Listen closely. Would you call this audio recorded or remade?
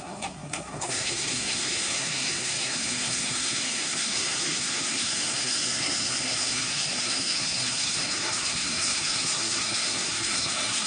remade